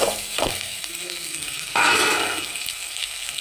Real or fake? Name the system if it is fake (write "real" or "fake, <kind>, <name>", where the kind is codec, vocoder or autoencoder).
fake, codec, SNAC